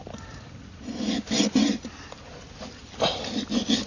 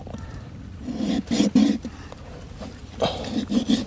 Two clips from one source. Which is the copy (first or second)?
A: second